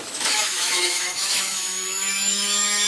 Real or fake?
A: fake